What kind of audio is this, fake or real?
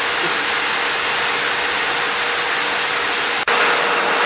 real